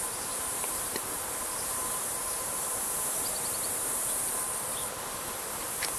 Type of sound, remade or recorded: remade